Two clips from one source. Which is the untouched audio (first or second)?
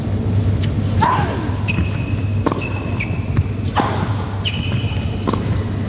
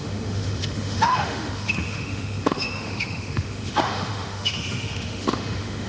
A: first